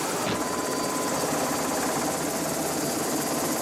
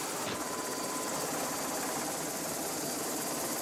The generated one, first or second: second